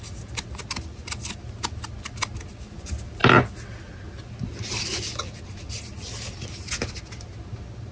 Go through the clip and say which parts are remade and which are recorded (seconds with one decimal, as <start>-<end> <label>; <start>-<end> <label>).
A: 0.0-7.9 recorded